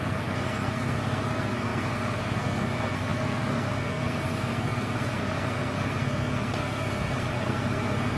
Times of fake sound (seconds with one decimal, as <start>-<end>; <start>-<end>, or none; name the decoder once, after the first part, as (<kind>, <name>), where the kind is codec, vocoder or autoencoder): 0.0-8.2 (codec, SNAC)